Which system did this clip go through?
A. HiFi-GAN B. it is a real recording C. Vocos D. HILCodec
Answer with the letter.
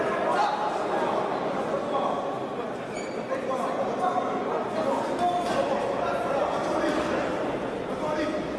B